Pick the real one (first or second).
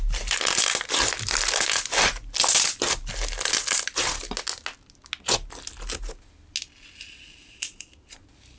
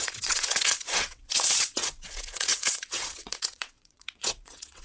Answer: first